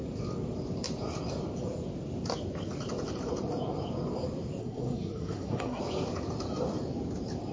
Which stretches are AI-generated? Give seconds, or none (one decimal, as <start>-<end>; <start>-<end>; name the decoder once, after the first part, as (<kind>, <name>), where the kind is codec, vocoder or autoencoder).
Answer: 4.6-5.8 (codec, SNAC)